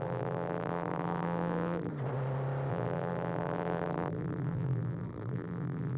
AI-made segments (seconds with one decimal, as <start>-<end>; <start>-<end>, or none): 0.0-1.9; 2.7-6.0

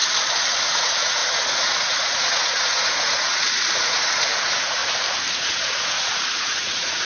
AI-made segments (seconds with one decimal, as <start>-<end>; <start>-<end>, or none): 0.5-4.8; 5.3-7.0

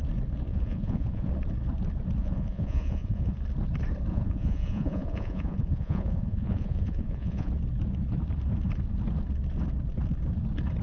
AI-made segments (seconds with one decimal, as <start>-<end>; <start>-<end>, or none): 0.5-1.3; 2.2-3.4; 4.1-7.5

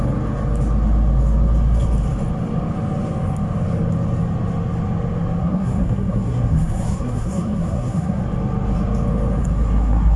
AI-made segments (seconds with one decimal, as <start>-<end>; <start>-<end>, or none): 5.4-8.2; 9.4-10.2

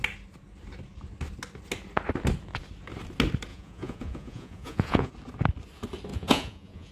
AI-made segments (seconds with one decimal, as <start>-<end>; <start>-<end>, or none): 3.5-5.1; 6.1-6.9